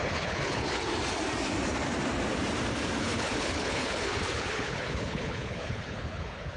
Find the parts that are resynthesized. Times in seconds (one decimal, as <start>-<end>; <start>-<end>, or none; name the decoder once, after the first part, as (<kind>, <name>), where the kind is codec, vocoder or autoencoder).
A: 0.0-0.9 (codec, HILCodec); 3.0-6.6